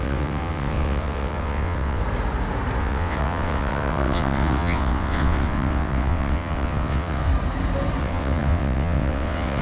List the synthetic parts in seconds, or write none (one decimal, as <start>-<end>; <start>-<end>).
0.0-2.0; 2.8-7.3; 8.0-9.6